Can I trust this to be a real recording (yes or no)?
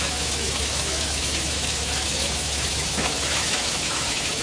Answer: no